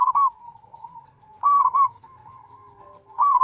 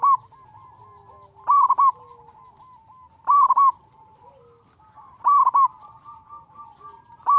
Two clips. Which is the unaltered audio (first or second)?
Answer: second